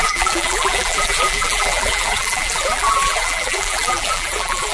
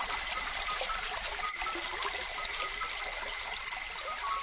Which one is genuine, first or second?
second